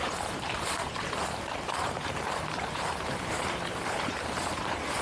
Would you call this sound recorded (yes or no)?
no